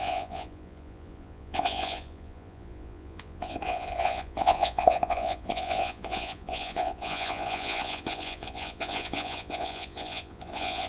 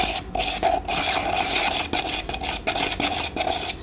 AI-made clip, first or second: first